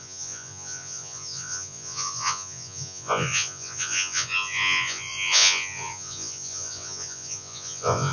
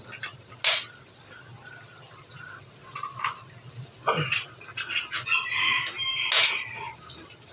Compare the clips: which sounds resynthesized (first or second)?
first